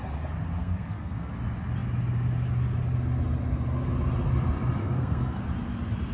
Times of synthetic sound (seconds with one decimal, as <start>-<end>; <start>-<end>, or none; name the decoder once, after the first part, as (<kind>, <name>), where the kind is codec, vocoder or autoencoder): 0.6-1.3 (codec, SNAC); 4.8-5.4